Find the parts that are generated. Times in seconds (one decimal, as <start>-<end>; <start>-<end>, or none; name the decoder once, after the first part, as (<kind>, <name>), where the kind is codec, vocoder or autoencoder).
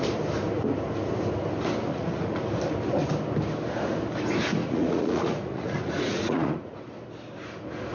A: 1.9-2.4 (vocoder, Vocos); 4.6-6.8